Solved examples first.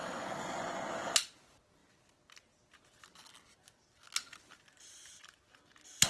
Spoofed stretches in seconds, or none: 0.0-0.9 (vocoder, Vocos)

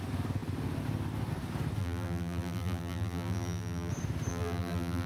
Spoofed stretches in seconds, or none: 1.8-3.9 (vocoder, BigVGAN v2); 4.3-5.1

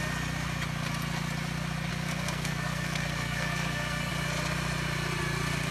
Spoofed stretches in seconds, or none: 1.9-4.1 (codec, SNAC)